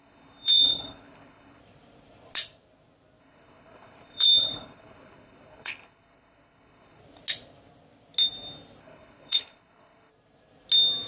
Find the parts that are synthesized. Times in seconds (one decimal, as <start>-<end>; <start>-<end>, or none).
0.0-1.6; 3.2-7.0; 8.8-10.1